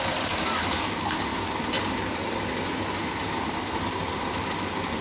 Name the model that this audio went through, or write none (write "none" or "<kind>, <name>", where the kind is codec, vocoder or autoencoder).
none